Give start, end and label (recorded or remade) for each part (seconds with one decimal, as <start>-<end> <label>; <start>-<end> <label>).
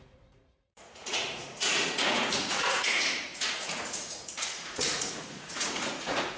0.0-6.4 remade